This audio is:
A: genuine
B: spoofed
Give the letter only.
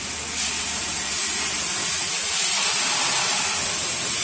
A